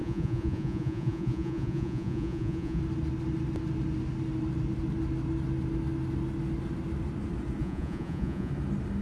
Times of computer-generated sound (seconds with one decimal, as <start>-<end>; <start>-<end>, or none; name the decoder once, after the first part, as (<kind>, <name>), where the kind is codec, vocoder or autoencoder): 0.0-2.8 (vocoder, Vocos); 7.6-8.5